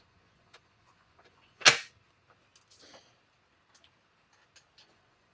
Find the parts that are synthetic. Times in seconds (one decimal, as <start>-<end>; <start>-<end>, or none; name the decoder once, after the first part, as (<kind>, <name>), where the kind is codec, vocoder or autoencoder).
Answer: 0.0-1.6 (vocoder, Vocos); 4.8-5.3